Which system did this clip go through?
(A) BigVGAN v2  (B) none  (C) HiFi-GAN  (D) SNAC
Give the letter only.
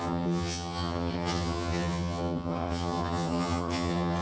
C